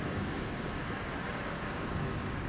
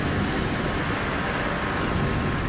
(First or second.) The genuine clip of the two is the second